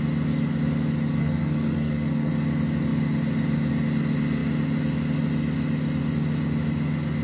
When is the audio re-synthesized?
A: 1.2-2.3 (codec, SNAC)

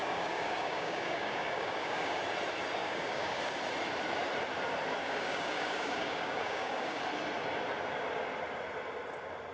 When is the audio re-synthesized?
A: 0.0-2.2 (codec, DAC); 2.8-3.4; 5.0-7.0

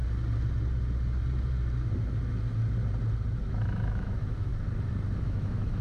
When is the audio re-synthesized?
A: 3.5-4.5 (autoencoder, DAC-VAE); 5.2-5.8

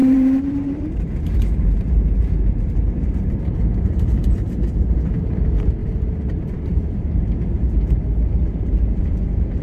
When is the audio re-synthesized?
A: 0.0-9.6 (vocoder, BigVGAN v2)

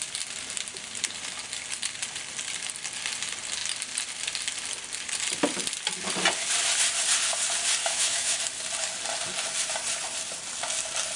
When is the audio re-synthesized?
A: 7.8-8.4 (autoencoder, DAC-VAE)

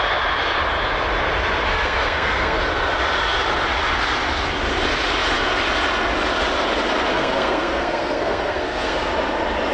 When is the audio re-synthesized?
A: 1.7-2.6 (codec, SNAC); 7.1-9.1